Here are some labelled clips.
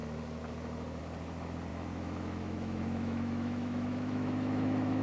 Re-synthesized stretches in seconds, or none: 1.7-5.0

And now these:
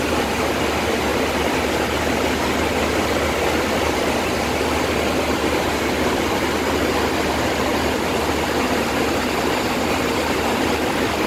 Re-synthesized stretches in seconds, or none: none

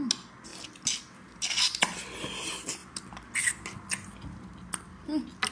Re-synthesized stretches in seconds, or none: none

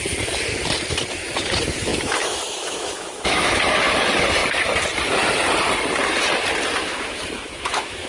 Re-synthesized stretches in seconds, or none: 1.9-3.6; 6.8-8.1

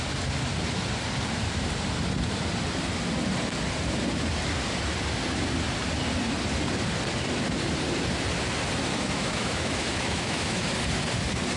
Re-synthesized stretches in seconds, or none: 8.9-10.7